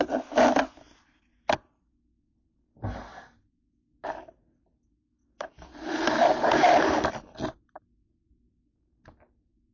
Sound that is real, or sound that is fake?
real